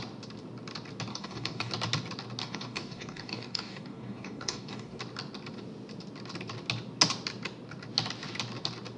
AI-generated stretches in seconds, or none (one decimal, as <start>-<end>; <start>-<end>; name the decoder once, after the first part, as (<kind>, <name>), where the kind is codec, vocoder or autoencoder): 1.1-1.7 (codec, DAC); 2.4-5.0